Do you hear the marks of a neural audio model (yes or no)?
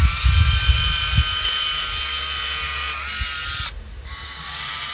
no